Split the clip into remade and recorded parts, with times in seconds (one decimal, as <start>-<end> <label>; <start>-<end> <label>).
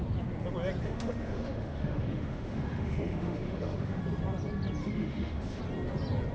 0.0-0.8 recorded; 0.8-4.0 remade; 4.0-4.8 recorded; 4.8-5.6 remade; 5.6-6.3 recorded